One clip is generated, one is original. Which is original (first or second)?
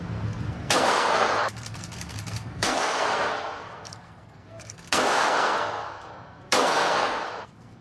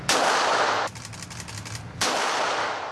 second